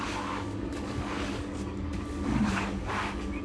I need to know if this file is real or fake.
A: fake